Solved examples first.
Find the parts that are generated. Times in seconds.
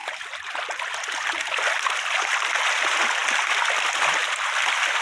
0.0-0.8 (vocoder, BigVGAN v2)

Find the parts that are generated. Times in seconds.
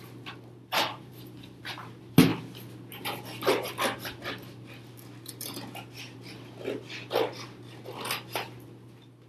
0.9-1.7 (vocoder, BigVGAN v2)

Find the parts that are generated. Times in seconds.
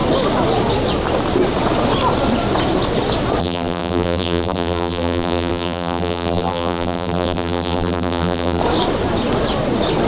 3.4-8.6 (vocoder, BigVGAN v2)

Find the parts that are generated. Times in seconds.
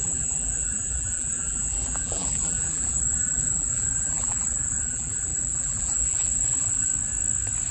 0.0-6.9 (vocoder, BigVGAN v2)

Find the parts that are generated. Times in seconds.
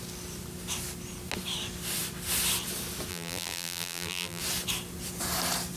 3.1-4.4 (vocoder, BigVGAN v2)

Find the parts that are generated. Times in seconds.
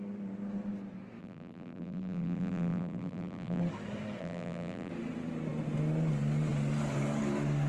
1.2-3.6 (vocoder, BigVGAN v2); 4.2-4.9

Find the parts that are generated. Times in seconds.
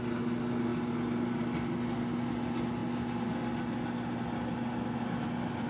0.7-2.0 (vocoder, BigVGAN v2)